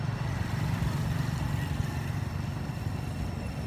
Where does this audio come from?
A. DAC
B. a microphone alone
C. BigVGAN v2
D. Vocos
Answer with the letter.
B